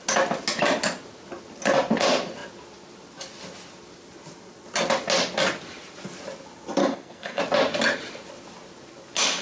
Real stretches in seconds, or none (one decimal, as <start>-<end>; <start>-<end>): 0.0-6.8; 7.4-9.4